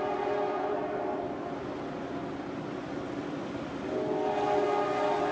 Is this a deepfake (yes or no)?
no